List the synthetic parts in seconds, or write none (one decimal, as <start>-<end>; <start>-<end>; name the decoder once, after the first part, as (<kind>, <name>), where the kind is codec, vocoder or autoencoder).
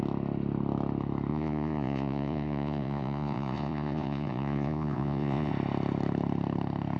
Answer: 1.3-5.5 (vocoder, Vocos)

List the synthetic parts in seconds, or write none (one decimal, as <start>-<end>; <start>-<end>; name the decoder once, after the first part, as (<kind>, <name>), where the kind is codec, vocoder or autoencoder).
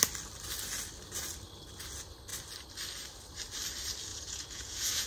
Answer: 4.1-5.1 (vocoder, Vocos)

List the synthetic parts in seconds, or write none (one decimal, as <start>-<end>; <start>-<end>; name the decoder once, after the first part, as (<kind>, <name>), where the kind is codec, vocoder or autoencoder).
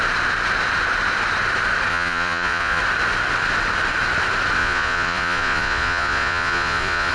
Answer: 1.9-2.8 (vocoder, Vocos); 4.6-7.1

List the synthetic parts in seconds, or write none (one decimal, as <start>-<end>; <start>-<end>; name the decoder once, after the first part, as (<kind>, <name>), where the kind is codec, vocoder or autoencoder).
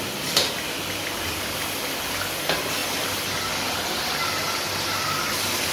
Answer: none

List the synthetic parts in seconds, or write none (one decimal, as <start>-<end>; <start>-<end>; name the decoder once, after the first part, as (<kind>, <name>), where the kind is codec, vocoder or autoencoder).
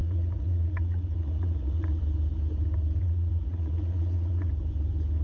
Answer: 0.0-2.0 (vocoder, Vocos); 3.0-4.5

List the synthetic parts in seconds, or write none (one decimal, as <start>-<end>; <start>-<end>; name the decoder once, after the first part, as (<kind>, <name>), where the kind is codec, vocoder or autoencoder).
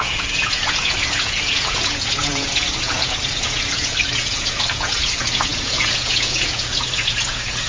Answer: 0.0-7.7 (vocoder, Vocos)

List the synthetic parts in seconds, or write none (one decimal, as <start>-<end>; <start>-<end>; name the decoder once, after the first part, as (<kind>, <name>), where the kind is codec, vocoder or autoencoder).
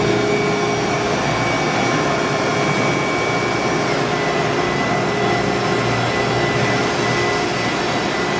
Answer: none